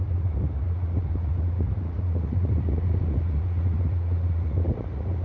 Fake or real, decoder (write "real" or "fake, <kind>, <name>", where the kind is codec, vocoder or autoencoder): fake, vocoder, Vocos